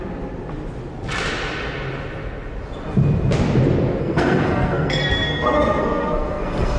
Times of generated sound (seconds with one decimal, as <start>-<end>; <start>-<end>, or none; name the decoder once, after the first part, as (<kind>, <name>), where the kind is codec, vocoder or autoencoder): 4.0-6.8 (codec, SNAC)